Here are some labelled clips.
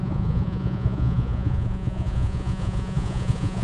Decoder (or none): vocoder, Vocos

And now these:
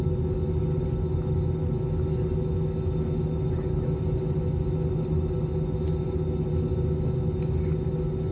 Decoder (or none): none